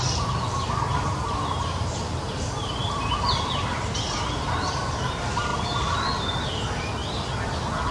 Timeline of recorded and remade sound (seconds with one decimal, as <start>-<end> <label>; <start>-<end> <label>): 0.0-7.9 recorded